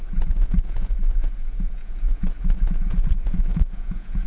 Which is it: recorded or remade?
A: remade